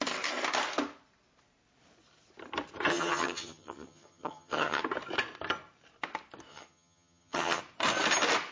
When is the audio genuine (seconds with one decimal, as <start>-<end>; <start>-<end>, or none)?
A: 0.0-2.9; 4.8-6.5; 7.6-8.5

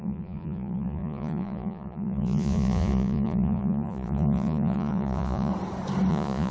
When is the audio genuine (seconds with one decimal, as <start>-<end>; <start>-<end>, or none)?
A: 5.5-6.1

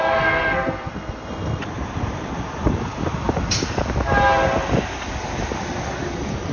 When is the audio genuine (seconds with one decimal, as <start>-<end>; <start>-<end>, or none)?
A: 1.6-6.5

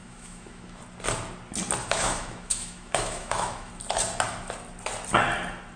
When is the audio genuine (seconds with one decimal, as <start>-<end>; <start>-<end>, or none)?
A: 0.8-1.8; 3.7-5.8

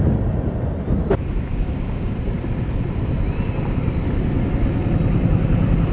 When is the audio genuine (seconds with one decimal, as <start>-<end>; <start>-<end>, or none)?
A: 0.0-1.5; 2.1-5.9

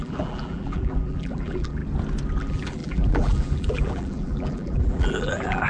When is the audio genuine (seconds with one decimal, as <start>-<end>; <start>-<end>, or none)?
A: 1.8-2.4

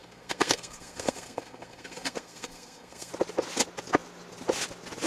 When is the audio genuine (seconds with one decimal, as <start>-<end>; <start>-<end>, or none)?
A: 3.1-5.1

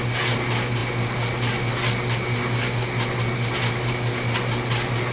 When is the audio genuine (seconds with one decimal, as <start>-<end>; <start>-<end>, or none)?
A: 0.0-5.1